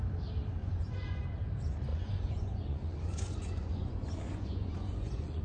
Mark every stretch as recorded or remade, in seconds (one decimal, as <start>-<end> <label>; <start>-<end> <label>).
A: 0.0-0.6 recorded; 0.6-1.2 remade; 1.2-1.9 recorded; 1.9-5.4 remade